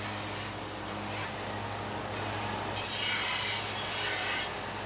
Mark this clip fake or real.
real